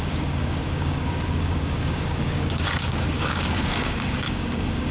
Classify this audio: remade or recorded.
remade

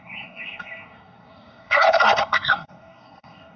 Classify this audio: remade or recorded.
remade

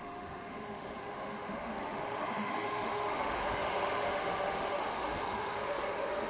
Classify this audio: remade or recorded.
remade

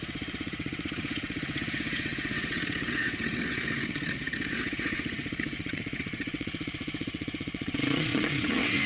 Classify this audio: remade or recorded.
remade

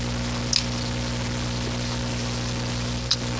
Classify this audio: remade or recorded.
recorded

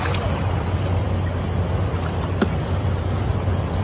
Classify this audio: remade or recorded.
recorded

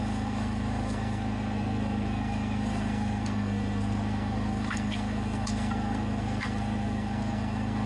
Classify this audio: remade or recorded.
remade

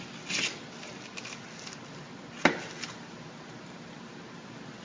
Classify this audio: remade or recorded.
recorded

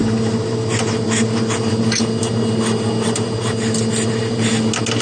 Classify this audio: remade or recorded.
recorded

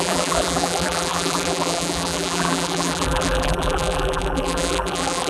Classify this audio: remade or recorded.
remade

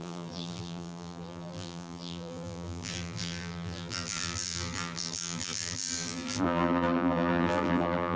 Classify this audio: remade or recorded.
remade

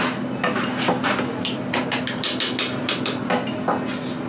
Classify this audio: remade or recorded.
recorded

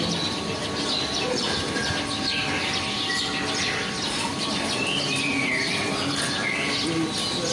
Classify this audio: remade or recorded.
recorded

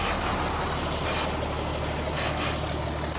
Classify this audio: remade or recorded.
recorded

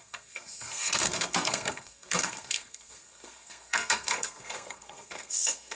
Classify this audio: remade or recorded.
remade